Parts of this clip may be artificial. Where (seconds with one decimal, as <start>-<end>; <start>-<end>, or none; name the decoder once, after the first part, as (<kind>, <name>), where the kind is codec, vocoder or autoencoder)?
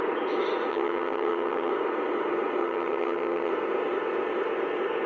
0.7-1.7 (vocoder, HiFi-GAN); 2.6-3.5